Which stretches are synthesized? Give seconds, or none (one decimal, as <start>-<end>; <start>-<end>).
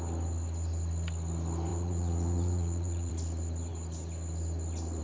1.7-3.1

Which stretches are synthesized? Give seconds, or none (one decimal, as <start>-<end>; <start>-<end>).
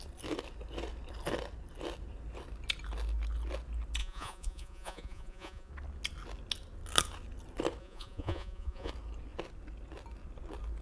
4.0-5.7; 7.8-8.9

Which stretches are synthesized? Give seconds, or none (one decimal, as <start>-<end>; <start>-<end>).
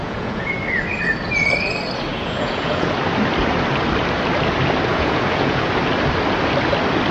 0.0-0.5; 2.1-2.9; 4.9-5.7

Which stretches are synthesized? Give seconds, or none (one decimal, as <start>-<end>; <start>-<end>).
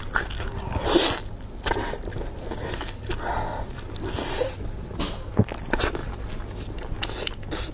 none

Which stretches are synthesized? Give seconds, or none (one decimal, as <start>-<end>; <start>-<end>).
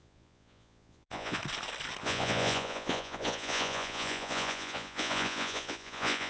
0.0-1.4; 2.0-6.3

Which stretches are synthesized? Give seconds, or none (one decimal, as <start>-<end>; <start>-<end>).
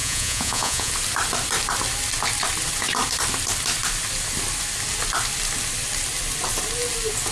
0.0-0.9